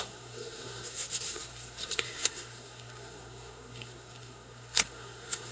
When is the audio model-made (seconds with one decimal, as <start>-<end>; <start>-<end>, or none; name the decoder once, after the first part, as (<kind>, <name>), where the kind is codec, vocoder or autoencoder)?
0.0-5.5 (codec, SNAC)